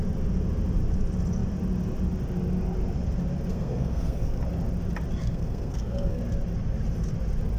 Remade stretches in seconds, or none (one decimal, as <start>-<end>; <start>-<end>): 3.5-4.4; 5.2-6.2